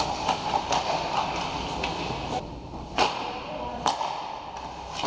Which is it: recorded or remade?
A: recorded